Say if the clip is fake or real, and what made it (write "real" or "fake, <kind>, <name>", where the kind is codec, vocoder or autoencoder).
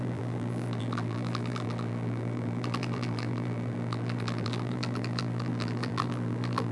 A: fake, vocoder, BigVGAN v2